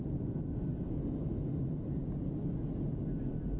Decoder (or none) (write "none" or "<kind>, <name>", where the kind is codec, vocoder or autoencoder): none